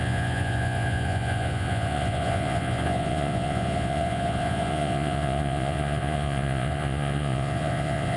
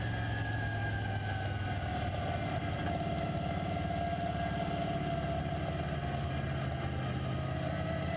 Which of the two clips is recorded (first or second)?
second